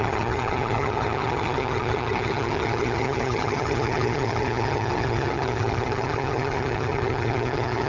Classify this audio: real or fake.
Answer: fake